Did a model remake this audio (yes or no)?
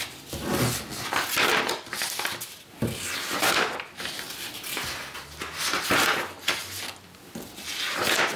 no